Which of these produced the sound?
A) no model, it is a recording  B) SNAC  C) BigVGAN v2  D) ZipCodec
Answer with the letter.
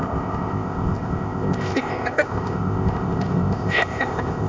D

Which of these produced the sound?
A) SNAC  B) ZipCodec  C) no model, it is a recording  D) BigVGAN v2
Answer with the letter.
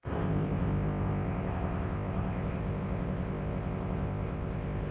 B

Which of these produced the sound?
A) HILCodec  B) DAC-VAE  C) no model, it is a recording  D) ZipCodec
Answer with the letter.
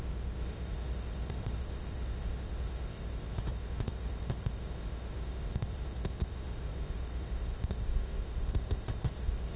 D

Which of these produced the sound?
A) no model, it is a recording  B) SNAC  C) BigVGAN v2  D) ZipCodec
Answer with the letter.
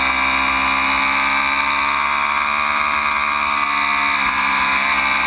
A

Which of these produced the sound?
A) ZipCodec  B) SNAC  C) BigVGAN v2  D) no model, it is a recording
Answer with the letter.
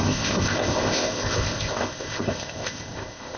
A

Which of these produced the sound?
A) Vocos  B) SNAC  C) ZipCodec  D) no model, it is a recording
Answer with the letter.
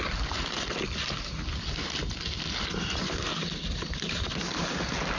D